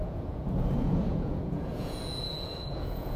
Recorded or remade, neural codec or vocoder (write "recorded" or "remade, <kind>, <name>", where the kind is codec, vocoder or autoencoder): remade, vocoder, Vocos